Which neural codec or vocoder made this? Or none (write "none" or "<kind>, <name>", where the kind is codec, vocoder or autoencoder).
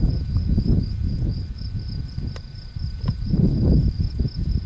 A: none